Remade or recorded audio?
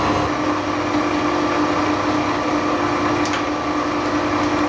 recorded